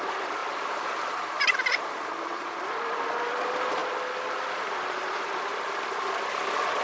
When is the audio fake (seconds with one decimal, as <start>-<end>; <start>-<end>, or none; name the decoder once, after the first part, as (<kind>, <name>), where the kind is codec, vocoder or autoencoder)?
0.0-3.8 (vocoder, BigVGAN v2); 4.5-5.5